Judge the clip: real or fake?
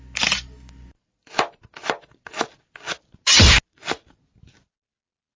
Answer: real